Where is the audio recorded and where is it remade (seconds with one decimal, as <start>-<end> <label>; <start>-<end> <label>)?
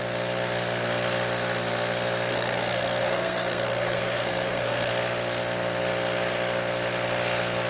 0.0-2.3 recorded; 2.3-4.9 remade; 4.9-7.7 recorded